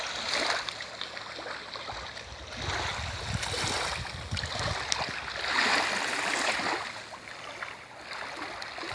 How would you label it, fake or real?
real